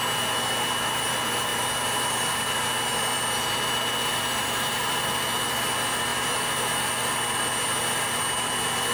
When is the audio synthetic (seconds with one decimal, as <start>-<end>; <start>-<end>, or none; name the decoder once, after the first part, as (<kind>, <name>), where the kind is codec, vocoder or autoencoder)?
1.5-3.5 (vocoder, BigVGAN v2); 4.1-5.1; 6.1-8.2